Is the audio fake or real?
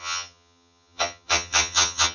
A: fake